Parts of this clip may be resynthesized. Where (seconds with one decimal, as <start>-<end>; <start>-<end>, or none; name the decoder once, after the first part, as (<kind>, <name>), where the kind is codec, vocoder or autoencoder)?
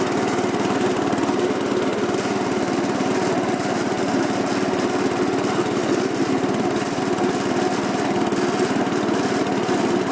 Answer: none